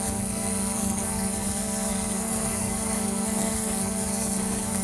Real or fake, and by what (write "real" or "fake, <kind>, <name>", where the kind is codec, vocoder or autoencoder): fake, codec, SNAC